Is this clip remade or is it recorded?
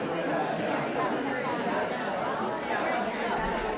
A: recorded